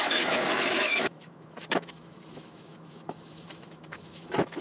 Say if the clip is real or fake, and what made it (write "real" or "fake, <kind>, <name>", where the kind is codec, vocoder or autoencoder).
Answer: fake, autoencoder, DAC-VAE